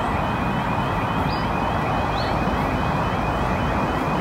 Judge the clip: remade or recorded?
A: recorded